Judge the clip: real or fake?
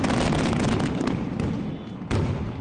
real